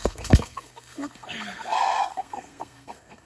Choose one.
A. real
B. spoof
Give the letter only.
B